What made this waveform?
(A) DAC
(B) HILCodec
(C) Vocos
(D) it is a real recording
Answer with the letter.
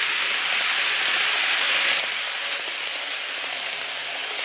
D